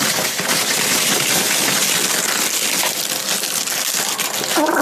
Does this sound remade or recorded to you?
recorded